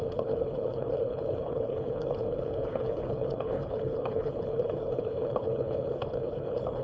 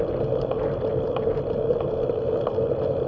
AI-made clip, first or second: first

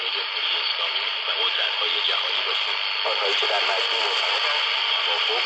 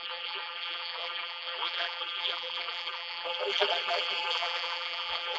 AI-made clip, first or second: second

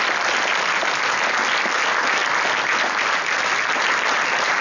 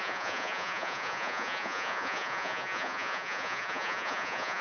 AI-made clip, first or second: second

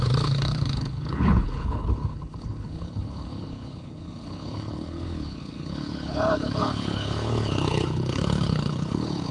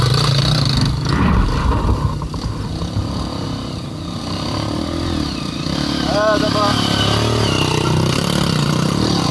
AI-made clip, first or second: first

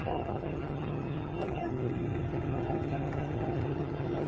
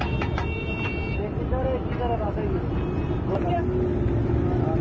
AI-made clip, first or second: first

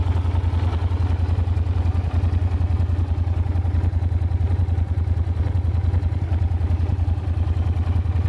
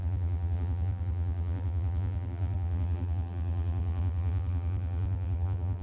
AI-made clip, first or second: second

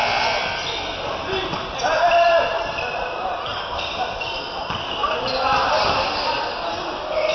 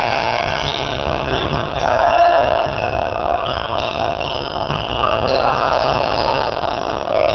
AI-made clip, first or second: second